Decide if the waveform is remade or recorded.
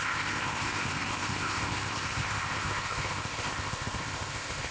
remade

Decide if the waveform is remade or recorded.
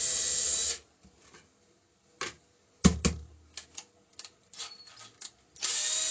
recorded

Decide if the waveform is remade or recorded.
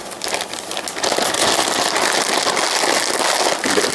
recorded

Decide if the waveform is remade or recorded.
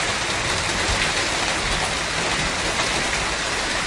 recorded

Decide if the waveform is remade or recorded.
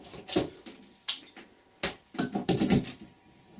recorded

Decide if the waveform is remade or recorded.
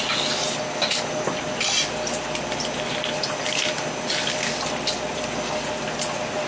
remade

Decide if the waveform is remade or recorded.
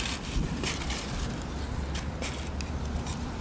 recorded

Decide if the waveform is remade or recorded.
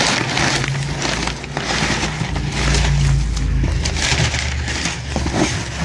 recorded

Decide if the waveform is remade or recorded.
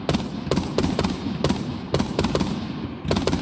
recorded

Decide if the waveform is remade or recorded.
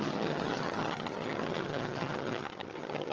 remade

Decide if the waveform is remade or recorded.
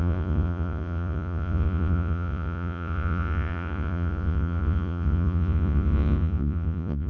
remade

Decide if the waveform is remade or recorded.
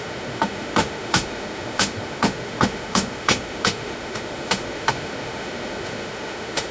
remade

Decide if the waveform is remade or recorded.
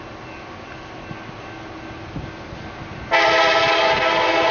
recorded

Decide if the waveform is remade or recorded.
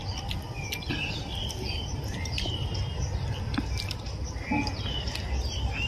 recorded